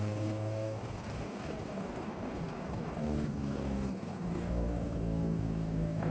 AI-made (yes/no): yes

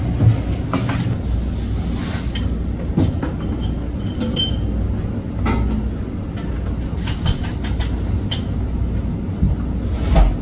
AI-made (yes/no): no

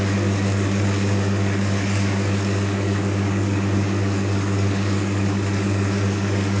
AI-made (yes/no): yes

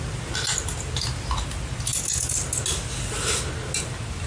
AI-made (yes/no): no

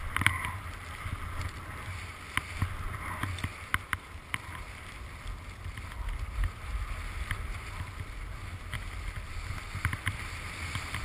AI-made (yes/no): no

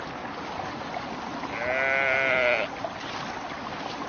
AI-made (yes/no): no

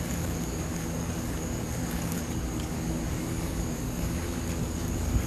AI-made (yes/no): yes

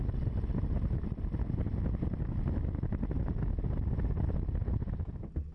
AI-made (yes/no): no